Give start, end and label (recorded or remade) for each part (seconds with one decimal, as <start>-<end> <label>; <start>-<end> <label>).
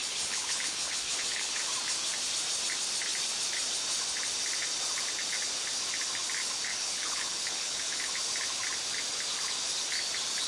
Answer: 0.0-1.6 remade; 1.6-6.7 recorded; 6.7-8.1 remade; 8.1-10.5 recorded